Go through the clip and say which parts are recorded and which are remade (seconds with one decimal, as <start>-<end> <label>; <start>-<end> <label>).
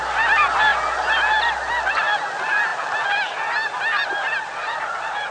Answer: 0.0-5.3 recorded